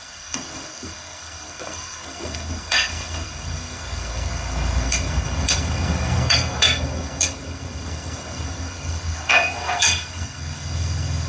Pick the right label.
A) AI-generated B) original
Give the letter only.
A